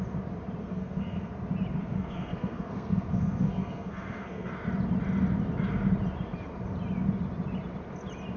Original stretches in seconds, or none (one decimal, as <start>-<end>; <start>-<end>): 0.0-0.6; 1.3-1.8; 4.5-8.4